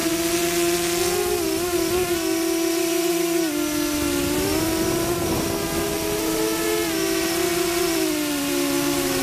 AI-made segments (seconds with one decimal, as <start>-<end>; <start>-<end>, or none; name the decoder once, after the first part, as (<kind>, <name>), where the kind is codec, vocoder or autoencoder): none